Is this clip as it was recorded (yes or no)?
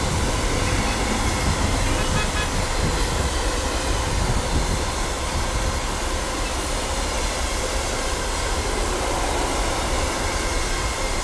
yes